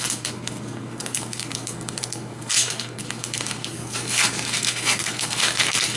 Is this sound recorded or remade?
remade